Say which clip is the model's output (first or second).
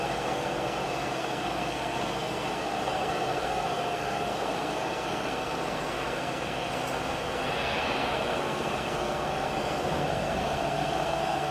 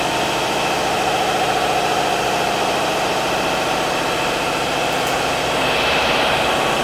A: first